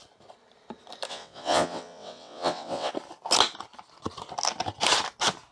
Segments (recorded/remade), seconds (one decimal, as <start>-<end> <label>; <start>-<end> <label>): 0.0-1.1 recorded; 1.1-2.9 remade; 2.9-5.5 recorded